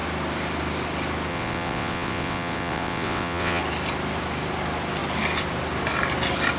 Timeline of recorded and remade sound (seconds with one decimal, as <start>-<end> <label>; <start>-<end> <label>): 0.0-1.3 recorded; 1.3-3.6 remade; 3.6-6.6 recorded